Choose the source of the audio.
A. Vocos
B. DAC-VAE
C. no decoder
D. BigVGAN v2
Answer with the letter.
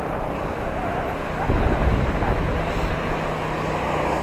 C